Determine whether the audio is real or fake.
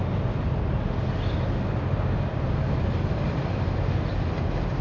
real